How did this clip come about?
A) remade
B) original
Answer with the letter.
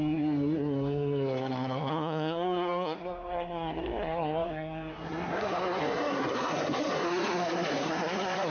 A